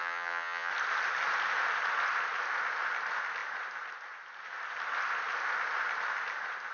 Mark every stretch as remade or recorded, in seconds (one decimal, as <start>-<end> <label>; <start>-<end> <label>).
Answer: 0.0-0.7 remade; 0.7-6.7 recorded